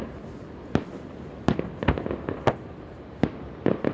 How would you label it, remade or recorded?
recorded